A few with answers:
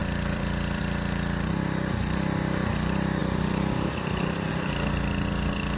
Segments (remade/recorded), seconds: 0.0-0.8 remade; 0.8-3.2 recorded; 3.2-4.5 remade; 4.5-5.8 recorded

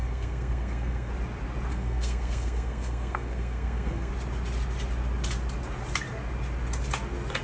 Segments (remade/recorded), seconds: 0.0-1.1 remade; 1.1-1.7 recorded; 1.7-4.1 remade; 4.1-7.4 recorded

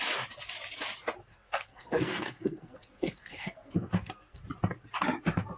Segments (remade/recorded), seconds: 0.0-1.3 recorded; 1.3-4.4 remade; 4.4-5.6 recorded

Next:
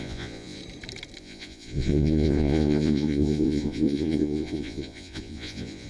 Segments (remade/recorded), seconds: 0.0-0.6 remade; 0.6-1.2 recorded; 1.2-5.9 remade

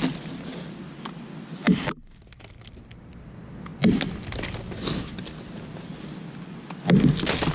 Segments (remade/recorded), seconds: 0.0-7.5 recorded

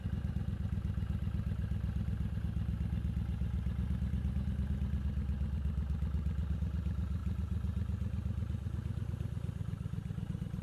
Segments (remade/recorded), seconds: 0.0-10.6 recorded

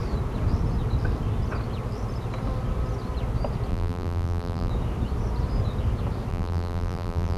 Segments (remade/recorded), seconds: 0.0-3.7 recorded; 3.7-4.7 remade; 4.7-6.3 recorded; 6.3-7.4 remade